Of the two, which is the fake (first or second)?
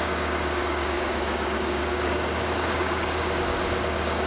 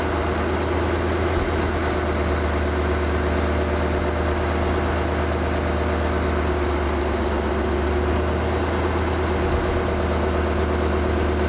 first